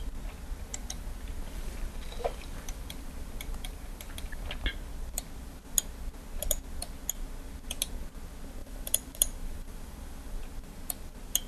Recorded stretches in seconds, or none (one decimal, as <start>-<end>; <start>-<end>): 0.0-0.7; 4.5-8.6; 10.4-11.5